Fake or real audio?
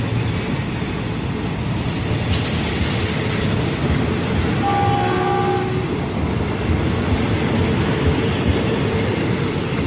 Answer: real